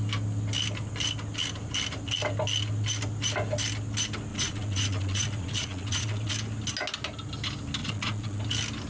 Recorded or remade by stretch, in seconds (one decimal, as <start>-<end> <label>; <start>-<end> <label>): 0.0-4.3 recorded; 4.3-6.3 remade; 6.3-7.8 recorded; 7.8-8.4 remade; 8.4-8.9 recorded